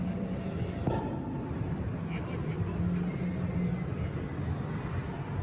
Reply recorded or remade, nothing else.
recorded